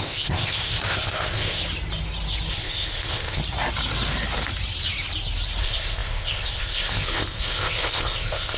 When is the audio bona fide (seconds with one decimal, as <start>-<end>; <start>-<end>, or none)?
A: 1.6-2.5; 3.4-5.6